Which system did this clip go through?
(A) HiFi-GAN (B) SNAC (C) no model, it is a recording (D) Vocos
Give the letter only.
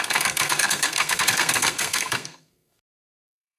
B